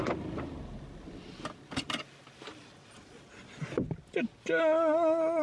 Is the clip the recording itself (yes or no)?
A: yes